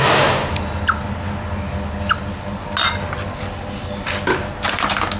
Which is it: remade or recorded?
recorded